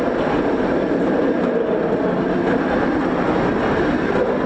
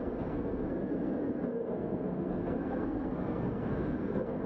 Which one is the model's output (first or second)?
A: second